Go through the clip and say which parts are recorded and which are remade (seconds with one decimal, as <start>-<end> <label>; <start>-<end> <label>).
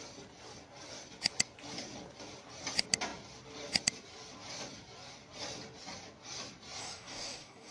0.0-6.8 recorded; 6.8-7.7 remade